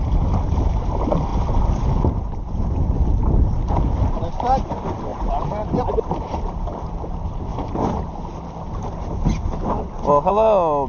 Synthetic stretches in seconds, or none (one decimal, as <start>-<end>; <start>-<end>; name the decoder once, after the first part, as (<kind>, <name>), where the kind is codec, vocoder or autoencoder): 5.1-6.8 (vocoder, BigVGAN v2)